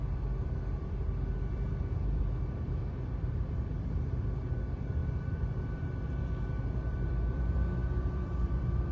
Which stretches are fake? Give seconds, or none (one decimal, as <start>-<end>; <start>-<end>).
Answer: 0.0-8.9